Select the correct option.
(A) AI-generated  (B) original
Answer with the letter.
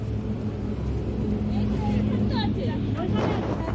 B